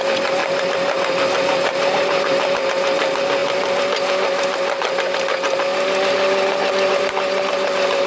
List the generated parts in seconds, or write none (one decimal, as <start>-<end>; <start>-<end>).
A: none

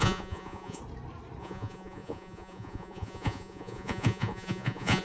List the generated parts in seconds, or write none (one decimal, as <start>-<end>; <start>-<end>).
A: 0.0-0.8; 1.4-5.0

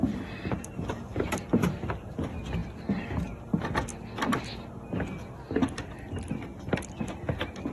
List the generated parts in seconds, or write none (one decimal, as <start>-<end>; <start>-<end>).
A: 1.1-2.1

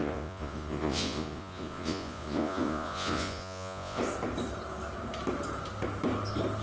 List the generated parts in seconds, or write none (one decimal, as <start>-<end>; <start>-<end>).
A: 0.0-4.0

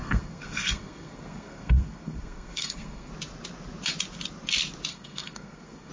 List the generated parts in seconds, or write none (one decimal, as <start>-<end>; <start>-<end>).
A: 0.0-3.1; 4.9-5.9

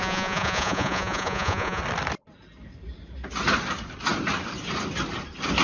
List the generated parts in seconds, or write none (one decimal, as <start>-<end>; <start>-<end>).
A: 0.0-1.8

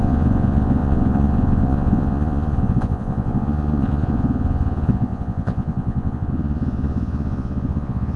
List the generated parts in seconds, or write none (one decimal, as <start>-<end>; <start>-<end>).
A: 0.0-8.2